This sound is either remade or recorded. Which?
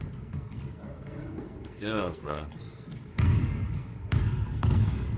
remade